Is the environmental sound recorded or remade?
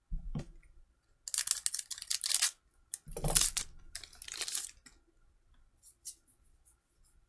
recorded